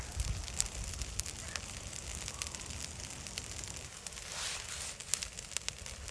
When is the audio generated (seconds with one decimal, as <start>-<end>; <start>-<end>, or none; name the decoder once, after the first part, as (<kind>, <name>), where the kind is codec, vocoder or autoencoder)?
none